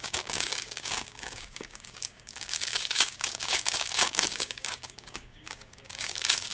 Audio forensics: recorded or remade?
remade